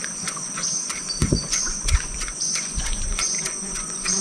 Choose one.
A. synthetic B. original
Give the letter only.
A